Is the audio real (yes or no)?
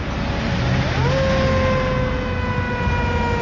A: yes